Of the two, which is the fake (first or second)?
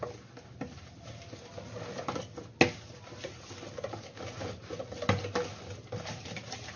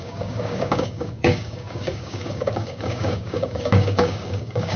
second